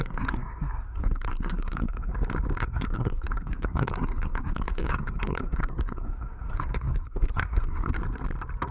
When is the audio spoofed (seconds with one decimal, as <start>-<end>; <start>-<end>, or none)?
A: 0.0-2.1; 2.6-8.0